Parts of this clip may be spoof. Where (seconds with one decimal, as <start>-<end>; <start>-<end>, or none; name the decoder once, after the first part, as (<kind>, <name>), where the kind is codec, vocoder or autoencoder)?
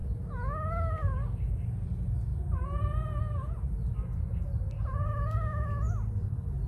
2.3-4.4 (vocoder, BigVGAN v2); 5.0-6.7